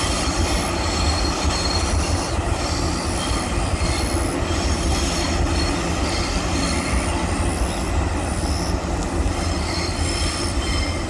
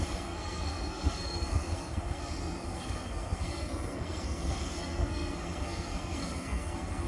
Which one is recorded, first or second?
first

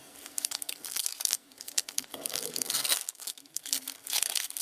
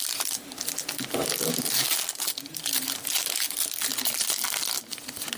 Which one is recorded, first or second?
second